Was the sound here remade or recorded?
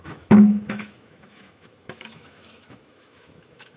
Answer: remade